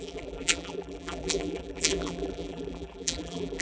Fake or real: fake